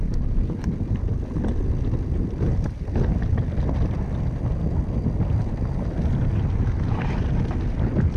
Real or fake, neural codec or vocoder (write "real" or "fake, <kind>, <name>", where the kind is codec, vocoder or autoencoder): real